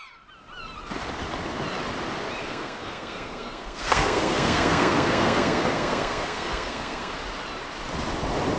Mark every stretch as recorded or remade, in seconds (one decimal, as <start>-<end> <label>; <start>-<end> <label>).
0.0-2.4 recorded; 2.4-7.1 remade; 7.1-8.6 recorded